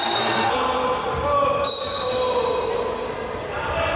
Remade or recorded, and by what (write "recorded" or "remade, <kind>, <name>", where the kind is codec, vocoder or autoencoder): recorded